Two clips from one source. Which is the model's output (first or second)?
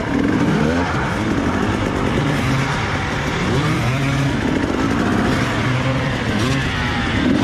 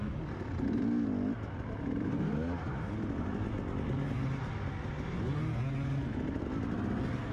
first